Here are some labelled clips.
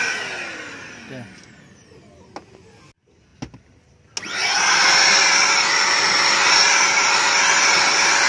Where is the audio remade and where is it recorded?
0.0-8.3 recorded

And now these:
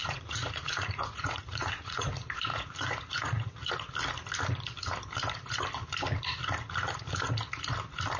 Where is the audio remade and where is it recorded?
0.0-2.1 remade; 2.1-2.5 recorded; 2.5-3.7 remade; 3.7-8.2 recorded

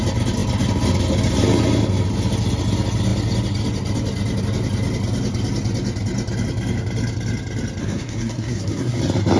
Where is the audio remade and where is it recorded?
0.0-7.8 recorded; 7.8-9.0 remade; 9.0-9.4 recorded

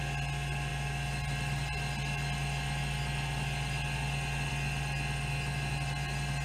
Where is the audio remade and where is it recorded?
0.0-6.4 recorded

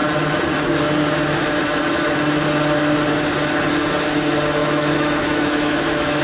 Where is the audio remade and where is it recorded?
0.0-4.6 recorded; 4.6-6.2 remade

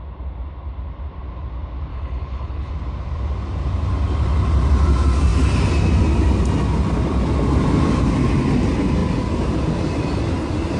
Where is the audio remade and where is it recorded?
0.0-1.9 recorded; 1.9-2.7 remade; 2.7-10.8 recorded

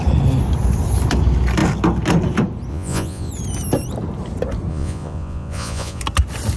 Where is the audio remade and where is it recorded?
0.0-2.7 recorded; 2.7-3.3 remade; 3.3-4.7 recorded; 4.7-6.0 remade; 6.0-6.6 recorded

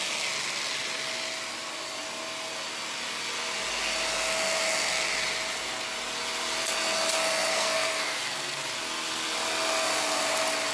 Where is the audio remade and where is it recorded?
0.0-7.5 recorded; 7.5-8.6 remade; 8.6-10.7 recorded